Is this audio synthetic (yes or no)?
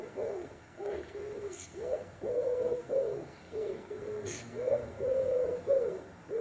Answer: yes